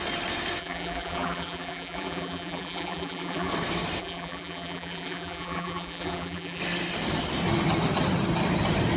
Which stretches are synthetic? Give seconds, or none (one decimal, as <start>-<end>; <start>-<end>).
0.6-3.5; 4.0-6.6